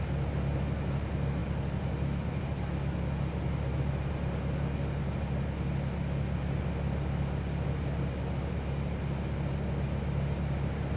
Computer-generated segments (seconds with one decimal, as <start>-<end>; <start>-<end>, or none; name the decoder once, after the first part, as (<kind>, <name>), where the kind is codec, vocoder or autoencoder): 1.4-2.4 (vocoder, BigVGAN v2)